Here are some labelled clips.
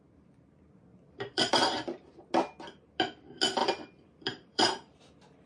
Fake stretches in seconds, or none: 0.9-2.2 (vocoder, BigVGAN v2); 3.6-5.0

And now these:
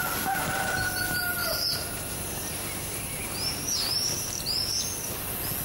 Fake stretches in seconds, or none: 1.4-4.8 (vocoder, BigVGAN v2)

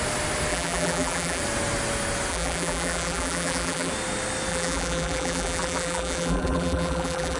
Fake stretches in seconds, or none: 0.5-1.4 (vocoder, BigVGAN v2); 2.3-3.9; 4.5-7.4

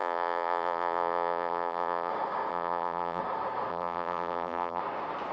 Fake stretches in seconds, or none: 0.0-2.1 (vocoder, BigVGAN v2); 2.5-3.2; 3.7-4.8

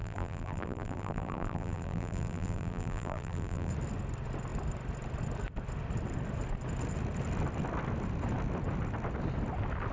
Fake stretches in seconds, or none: 0.0-3.7 (vocoder, BigVGAN v2)